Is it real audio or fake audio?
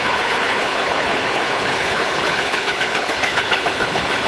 fake